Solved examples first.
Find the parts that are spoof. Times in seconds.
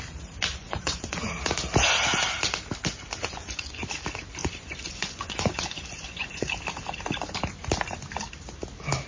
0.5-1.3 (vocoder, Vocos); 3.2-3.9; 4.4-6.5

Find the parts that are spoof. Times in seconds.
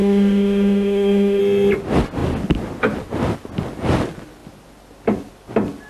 0.0-1.4 (autoencoder, DAC-VAE)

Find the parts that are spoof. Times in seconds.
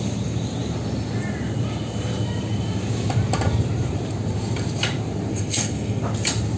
5.3-6.0 (codec, SNAC)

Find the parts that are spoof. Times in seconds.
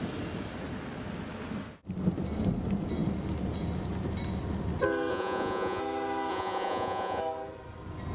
5.1-5.8 (vocoder, Vocos); 6.3-7.2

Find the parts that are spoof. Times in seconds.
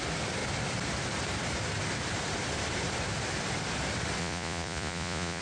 4.2-5.4 (vocoder, Vocos)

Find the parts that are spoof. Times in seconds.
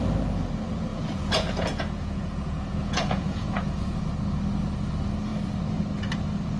0.9-4.0 (vocoder, Vocos)